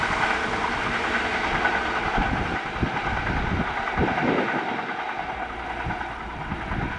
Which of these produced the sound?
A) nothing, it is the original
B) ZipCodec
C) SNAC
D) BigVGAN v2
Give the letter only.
A